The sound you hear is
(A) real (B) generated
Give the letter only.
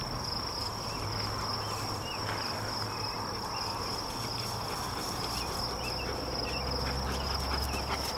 A